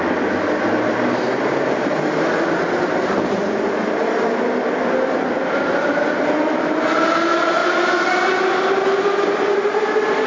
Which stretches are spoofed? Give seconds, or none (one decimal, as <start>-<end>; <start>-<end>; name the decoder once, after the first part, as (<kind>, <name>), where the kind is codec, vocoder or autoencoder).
7.6-8.1 (vocoder, BigVGAN v2)